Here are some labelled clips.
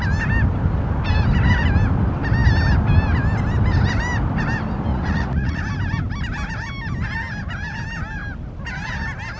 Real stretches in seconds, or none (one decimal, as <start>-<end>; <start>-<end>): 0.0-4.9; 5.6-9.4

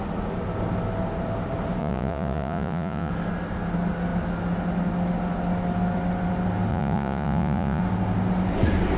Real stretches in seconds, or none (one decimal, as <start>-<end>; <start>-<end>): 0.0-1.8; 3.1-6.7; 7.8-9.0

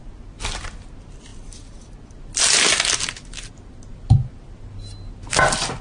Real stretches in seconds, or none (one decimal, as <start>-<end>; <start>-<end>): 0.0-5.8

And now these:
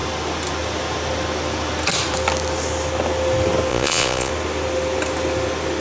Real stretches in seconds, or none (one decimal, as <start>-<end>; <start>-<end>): 0.0-3.7; 4.3-5.8

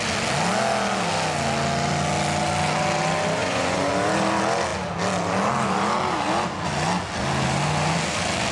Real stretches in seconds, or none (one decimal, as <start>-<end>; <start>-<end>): 0.0-3.4; 3.9-8.5

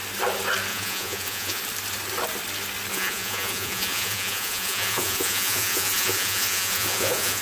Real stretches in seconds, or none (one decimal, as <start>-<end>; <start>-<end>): 0.0-0.7; 1.6-2.9